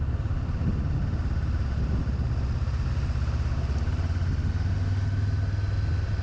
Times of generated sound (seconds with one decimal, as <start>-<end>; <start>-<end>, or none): none